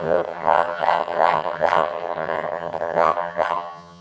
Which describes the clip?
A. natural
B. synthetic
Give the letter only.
B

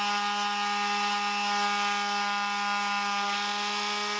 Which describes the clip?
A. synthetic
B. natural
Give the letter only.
B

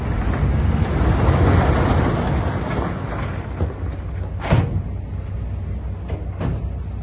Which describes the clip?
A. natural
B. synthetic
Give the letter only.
A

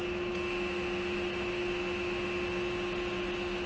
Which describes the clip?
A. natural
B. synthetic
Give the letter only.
A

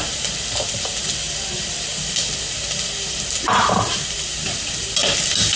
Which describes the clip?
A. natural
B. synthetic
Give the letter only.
A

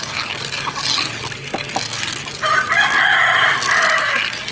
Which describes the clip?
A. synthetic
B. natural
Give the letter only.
B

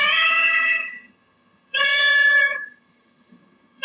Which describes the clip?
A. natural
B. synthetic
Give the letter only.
B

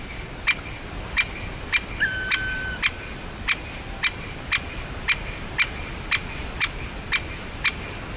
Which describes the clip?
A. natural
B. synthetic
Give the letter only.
A